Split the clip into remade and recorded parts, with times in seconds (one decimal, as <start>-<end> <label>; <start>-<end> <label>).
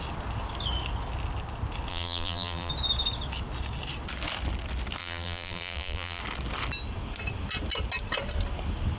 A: 0.0-1.9 recorded; 1.9-2.7 remade; 2.7-5.0 recorded; 5.0-6.2 remade; 6.2-9.0 recorded